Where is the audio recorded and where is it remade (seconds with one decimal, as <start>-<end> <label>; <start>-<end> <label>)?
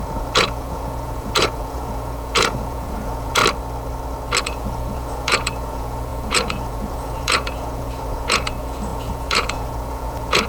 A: 0.0-3.4 remade; 3.4-4.4 recorded; 4.4-10.5 remade